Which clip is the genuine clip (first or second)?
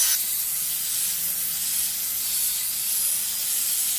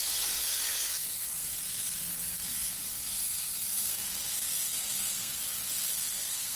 first